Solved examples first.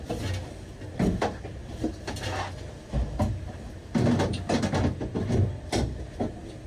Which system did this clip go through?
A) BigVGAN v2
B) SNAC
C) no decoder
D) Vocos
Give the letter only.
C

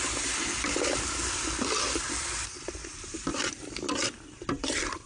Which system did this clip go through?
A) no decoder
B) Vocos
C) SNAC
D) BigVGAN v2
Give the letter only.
A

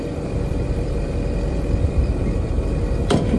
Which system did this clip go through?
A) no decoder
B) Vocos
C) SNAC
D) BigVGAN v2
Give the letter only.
D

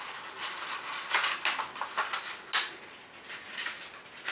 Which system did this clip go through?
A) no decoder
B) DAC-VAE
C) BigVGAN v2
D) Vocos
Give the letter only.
A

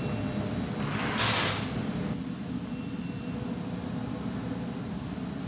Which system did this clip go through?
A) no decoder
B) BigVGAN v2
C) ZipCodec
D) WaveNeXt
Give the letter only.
A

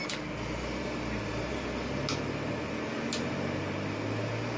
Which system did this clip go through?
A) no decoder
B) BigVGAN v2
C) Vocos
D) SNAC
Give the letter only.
A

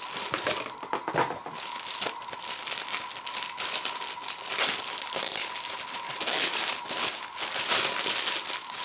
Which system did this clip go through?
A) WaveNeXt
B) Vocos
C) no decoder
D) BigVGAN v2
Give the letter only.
C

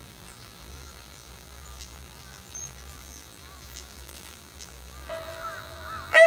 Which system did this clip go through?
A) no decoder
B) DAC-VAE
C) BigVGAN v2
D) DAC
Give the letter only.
C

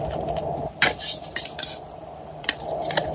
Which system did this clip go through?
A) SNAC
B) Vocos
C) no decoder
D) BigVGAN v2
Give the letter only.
D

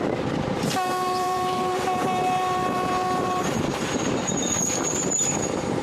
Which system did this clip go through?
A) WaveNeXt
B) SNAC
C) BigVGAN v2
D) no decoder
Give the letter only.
C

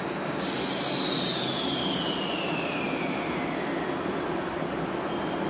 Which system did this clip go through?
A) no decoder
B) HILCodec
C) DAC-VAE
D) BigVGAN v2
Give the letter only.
A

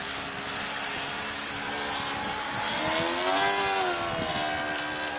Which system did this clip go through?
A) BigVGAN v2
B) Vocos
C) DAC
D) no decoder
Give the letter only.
D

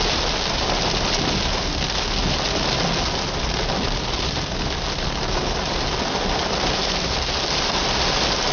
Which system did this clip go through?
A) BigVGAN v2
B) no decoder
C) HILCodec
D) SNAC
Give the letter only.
B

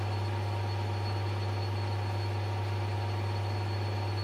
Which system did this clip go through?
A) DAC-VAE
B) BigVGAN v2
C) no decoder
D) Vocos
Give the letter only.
C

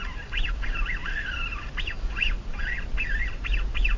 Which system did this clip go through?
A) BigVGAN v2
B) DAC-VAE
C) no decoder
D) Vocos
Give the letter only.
C